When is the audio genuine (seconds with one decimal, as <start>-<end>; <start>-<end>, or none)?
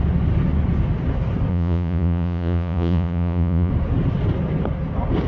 0.0-1.5; 3.7-5.3